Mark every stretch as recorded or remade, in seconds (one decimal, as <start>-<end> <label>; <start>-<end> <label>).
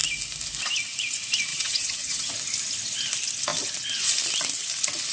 0.0-1.5 recorded; 1.5-2.3 remade; 2.3-5.1 recorded